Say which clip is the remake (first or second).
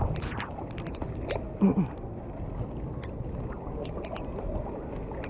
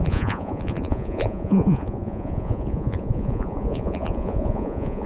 second